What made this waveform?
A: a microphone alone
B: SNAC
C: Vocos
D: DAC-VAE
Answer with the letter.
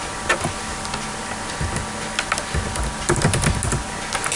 A